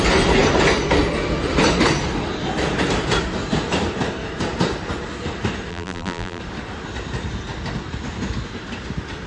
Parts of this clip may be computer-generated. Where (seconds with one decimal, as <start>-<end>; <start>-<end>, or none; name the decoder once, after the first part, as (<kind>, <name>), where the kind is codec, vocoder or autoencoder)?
5.7-6.4 (vocoder, BigVGAN v2)